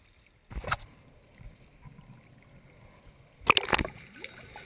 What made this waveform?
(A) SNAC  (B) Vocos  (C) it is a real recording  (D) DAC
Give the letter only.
C